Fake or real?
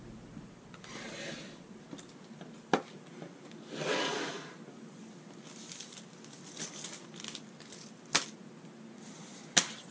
real